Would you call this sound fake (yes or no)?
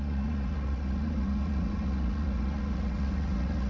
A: yes